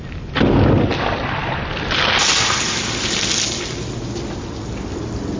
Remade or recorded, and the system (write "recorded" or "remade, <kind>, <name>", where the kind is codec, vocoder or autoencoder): recorded